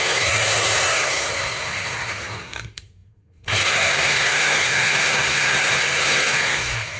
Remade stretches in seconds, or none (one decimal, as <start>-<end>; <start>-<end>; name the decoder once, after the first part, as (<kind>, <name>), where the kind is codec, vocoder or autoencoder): 0.0-7.0 (codec, SNAC)